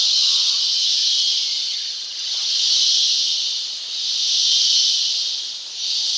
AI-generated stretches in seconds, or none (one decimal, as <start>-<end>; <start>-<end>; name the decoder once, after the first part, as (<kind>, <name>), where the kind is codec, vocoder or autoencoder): 0.0-0.6 (vocoder, HiFi-GAN); 1.7-2.5